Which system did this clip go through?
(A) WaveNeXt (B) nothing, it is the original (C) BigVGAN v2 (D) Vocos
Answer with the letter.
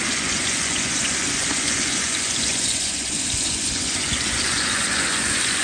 D